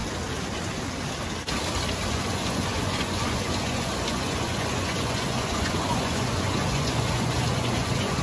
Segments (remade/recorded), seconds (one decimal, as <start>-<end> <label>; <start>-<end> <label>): 0.0-2.1 recorded; 2.1-8.2 remade